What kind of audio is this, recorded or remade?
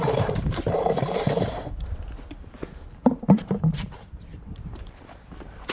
remade